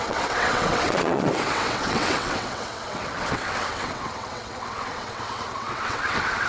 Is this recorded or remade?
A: remade